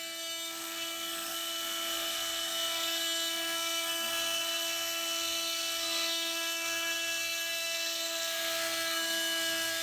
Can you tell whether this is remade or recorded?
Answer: remade